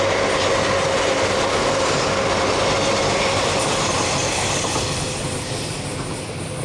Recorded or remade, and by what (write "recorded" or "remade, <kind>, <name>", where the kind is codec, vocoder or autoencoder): recorded